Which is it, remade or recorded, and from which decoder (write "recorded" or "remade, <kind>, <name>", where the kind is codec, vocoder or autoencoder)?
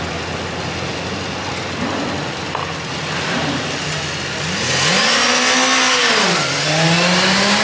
recorded